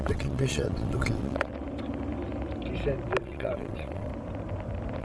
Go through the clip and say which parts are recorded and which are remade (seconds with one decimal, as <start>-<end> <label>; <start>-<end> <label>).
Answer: 0.0-1.5 remade; 1.5-3.2 recorded; 3.2-4.1 remade; 4.1-5.0 recorded